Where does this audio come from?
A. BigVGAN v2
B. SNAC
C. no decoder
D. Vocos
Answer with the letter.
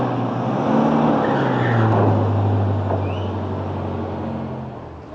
C